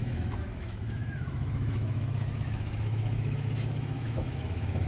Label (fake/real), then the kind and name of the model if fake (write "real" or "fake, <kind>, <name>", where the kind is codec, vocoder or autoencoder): fake, autoencoder, DAC-VAE